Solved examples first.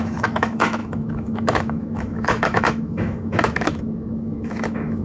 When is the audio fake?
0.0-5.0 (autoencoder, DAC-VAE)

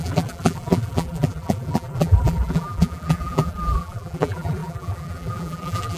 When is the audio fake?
0.0-6.0 (vocoder, BigVGAN v2)